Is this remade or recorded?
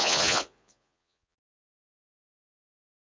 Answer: remade